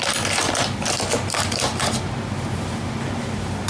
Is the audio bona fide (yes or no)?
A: yes